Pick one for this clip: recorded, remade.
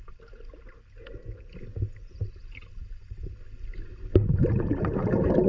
recorded